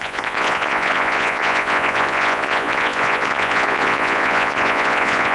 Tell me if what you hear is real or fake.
fake